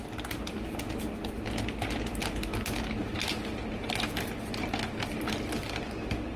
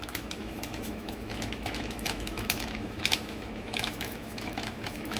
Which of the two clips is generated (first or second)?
second